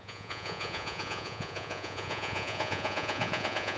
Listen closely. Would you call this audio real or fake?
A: fake